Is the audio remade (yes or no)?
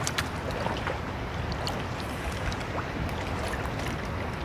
no